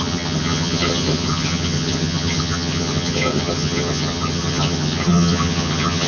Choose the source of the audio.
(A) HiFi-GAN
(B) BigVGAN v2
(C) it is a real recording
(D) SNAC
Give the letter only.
A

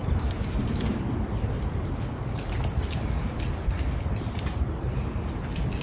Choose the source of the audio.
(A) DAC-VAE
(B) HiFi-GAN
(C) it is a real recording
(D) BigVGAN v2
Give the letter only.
C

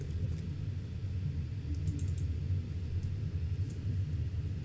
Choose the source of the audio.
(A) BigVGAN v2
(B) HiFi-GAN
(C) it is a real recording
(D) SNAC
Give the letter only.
C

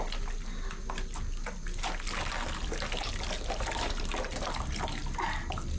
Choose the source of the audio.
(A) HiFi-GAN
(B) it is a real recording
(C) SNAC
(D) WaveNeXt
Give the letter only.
B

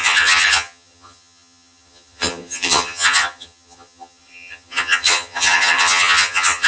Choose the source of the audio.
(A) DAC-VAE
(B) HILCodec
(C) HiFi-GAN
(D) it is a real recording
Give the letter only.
C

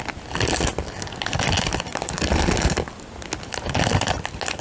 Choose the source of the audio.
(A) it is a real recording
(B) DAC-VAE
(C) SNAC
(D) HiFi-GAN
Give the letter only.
A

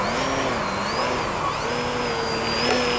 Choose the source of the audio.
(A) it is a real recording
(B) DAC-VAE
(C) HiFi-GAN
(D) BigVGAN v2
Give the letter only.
A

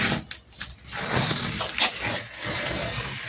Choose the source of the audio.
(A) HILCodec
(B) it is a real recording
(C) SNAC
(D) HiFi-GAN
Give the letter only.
B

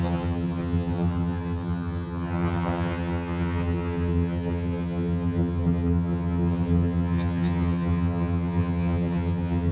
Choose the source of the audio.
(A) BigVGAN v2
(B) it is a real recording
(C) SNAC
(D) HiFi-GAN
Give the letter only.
D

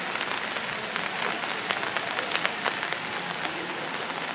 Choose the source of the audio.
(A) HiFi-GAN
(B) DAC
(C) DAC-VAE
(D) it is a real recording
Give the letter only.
D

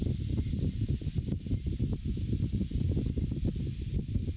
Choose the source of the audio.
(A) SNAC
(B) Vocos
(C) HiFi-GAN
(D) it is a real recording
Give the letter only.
D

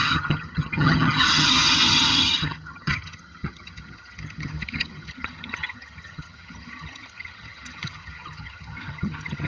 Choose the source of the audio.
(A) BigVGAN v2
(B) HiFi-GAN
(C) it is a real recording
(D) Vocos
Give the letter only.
B